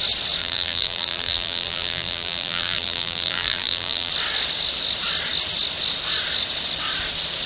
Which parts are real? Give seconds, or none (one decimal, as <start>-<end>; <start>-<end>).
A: 0.0-0.4; 4.1-7.5